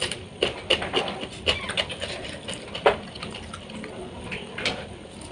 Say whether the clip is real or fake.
real